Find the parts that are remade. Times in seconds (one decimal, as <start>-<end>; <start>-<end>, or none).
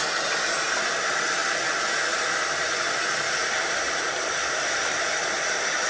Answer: 1.4-2.9; 3.4-5.2